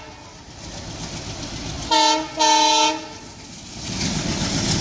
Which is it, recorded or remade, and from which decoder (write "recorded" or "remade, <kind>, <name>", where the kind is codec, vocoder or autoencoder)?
recorded